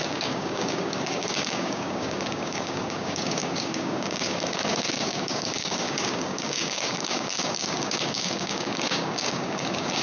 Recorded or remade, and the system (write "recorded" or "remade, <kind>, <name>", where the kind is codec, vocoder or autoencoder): remade, codec, DAC